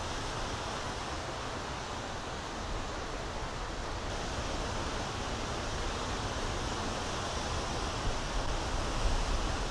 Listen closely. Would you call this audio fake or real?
real